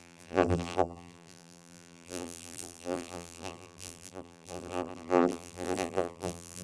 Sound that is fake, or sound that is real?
fake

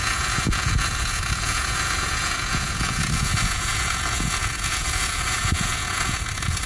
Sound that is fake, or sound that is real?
fake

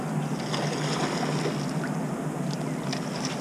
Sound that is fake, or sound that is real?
real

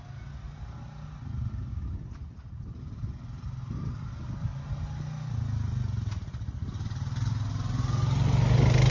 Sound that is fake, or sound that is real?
real